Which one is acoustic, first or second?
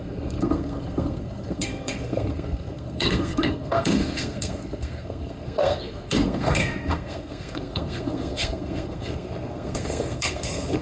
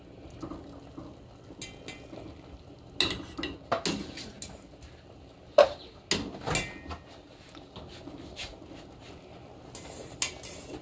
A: second